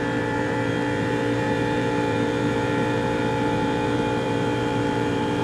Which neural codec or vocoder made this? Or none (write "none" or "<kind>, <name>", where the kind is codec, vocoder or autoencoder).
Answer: vocoder, BigVGAN v2